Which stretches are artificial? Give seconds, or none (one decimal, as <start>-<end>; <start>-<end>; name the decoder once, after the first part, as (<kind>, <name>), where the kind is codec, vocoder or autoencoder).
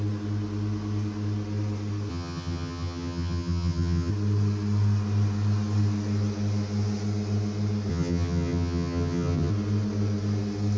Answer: 2.1-4.1 (vocoder, HiFi-GAN); 7.9-9.5